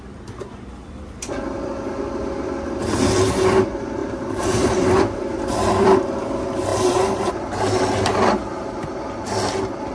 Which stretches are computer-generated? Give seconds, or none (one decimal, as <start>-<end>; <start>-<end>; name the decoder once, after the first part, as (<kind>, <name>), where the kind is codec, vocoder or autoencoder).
4.0-6.2 (vocoder, BigVGAN v2); 6.7-7.4